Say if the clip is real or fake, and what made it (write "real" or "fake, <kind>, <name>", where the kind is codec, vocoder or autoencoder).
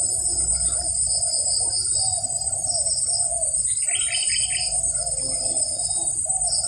real